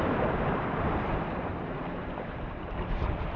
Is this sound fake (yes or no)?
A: yes